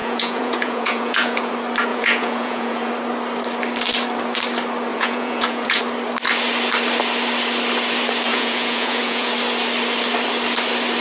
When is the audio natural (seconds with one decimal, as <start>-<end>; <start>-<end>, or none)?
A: 1.5-1.9; 2.9-4.9; 5.8-8.3; 9.3-11.0